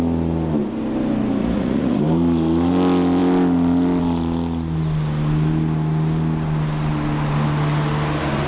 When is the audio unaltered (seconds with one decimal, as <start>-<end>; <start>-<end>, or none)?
0.0-1.4; 2.0-8.5